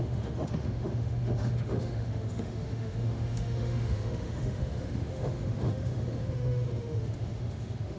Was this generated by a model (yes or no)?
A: yes